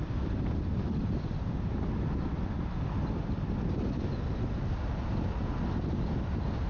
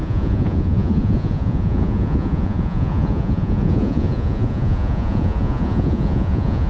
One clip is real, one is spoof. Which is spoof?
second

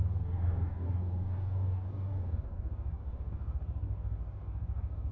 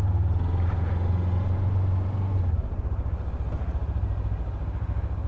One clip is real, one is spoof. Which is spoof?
first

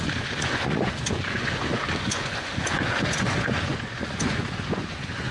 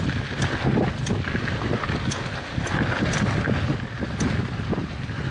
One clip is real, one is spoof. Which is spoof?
first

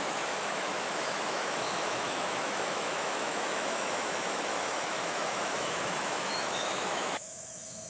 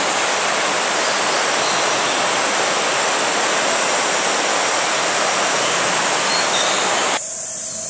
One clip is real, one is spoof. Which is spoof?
first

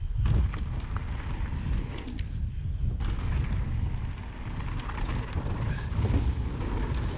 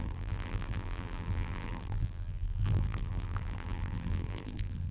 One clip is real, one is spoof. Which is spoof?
second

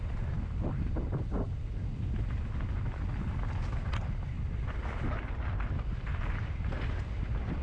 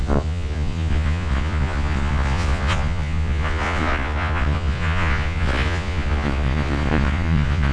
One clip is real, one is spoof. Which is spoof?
second